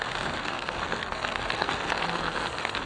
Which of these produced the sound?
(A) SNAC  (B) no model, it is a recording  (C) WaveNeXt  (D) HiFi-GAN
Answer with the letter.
A